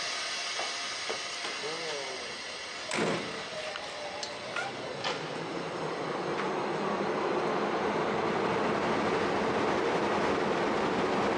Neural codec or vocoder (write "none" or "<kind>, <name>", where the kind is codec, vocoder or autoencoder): none